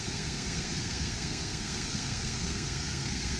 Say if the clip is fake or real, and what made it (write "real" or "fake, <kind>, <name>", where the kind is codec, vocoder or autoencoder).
fake, codec, SNAC